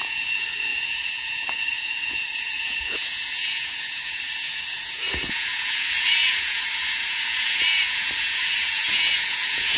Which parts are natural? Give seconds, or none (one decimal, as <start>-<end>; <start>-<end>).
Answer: none